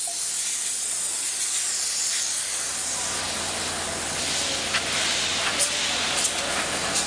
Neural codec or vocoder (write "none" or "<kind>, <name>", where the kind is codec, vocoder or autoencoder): none